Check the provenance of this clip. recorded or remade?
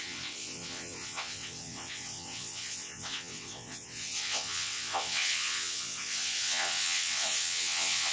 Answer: remade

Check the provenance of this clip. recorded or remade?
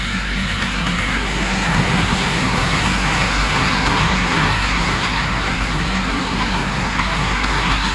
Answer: remade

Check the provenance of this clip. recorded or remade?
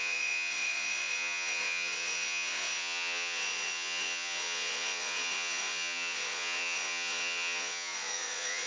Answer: remade